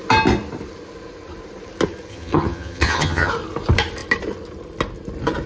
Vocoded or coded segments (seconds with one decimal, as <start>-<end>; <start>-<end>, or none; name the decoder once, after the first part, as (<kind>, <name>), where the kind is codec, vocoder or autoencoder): 2.1-3.3 (vocoder, HiFi-GAN)

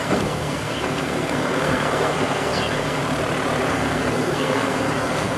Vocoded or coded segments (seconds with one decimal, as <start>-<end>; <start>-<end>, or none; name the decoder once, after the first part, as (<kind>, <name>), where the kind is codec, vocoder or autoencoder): 0.0-3.0 (codec, SNAC); 3.7-5.4